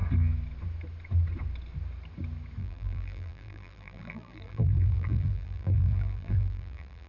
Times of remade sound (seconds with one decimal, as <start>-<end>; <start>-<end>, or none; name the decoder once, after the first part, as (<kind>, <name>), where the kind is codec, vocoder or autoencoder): 2.6-7.1 (vocoder, BigVGAN v2)